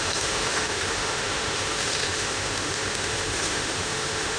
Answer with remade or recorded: remade